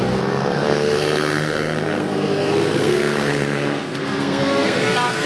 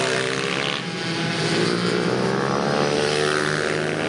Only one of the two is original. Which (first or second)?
second